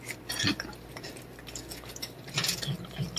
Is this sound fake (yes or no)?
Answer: no